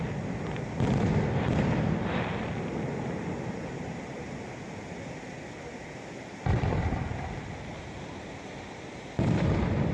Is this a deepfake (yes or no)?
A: no